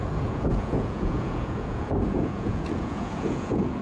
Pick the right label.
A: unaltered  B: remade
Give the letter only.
B